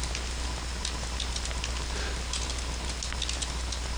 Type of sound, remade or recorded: recorded